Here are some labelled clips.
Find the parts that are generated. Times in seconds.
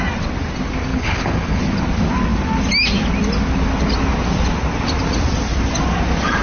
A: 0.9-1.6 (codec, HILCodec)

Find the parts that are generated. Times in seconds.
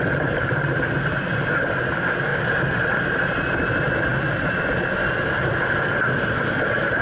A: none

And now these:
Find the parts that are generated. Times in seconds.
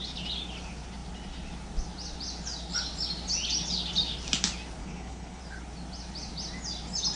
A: 4.8-5.4 (codec, HILCodec)